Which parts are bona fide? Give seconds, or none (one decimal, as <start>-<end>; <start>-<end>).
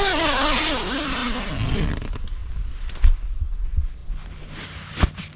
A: 0.0-2.4; 3.3-5.4